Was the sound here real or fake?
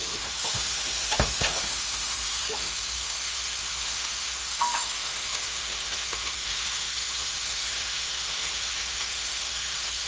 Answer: fake